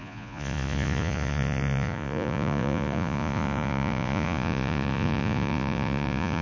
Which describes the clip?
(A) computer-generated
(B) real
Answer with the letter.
A